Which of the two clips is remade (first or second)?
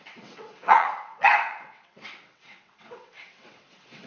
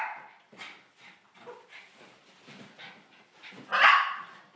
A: first